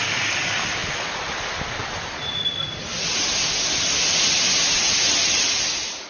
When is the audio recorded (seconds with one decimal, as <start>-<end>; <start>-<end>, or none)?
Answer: 0.0-6.1